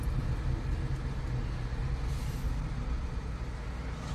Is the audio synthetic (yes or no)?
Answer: no